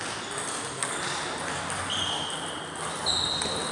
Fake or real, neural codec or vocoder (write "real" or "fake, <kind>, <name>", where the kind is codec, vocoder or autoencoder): real